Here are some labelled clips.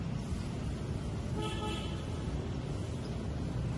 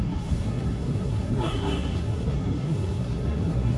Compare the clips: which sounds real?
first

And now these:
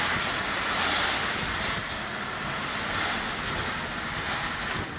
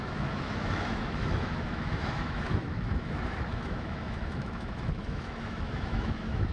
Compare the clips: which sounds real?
first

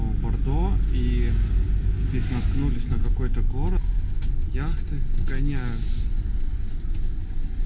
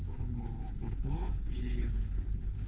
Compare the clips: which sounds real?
first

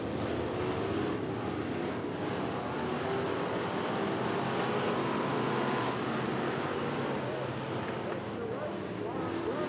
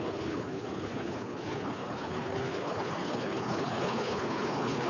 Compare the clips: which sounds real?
first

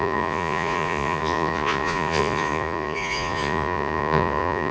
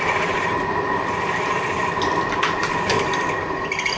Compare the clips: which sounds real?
second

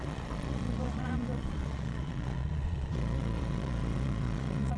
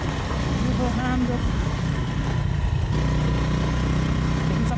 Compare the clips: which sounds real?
second